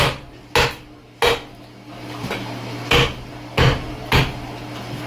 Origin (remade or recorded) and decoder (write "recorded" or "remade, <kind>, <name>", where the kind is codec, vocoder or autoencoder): recorded